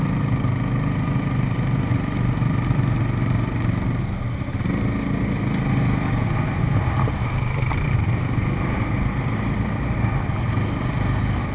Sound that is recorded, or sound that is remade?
recorded